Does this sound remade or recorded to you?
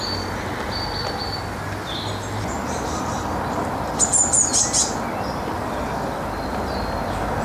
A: recorded